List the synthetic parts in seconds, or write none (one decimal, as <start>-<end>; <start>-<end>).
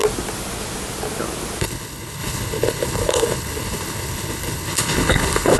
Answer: 1.6-5.6